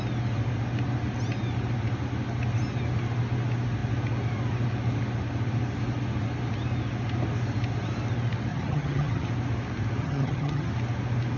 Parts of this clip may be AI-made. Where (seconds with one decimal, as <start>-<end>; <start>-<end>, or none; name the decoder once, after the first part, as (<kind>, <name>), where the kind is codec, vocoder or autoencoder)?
8.5-9.3 (vocoder, HiFi-GAN); 10.0-10.7